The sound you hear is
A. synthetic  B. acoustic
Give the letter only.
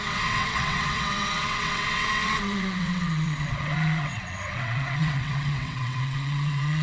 A